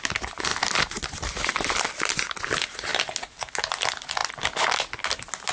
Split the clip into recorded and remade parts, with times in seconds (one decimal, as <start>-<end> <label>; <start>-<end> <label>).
0.0-5.5 recorded